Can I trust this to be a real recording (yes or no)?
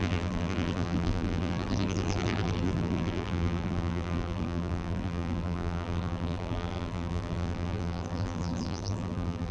no